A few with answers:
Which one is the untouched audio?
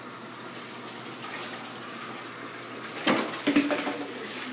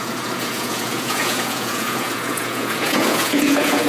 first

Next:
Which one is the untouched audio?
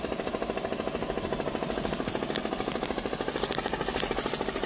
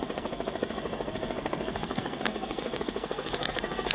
first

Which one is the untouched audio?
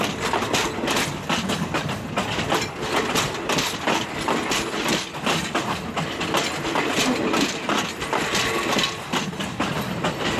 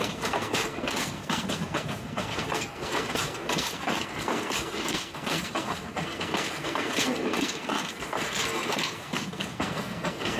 first